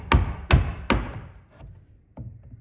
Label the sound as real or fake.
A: real